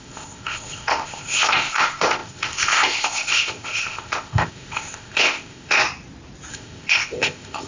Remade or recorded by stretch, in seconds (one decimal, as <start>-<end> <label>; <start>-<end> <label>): 0.0-5.8 remade; 5.8-6.5 recorded; 6.5-7.7 remade